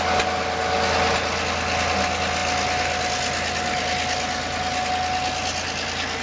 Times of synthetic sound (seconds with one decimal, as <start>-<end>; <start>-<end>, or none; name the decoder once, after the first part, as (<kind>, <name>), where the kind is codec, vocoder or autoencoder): none